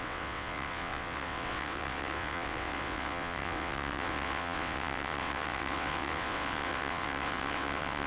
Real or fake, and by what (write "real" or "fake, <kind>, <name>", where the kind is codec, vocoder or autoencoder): fake, vocoder, WaveNeXt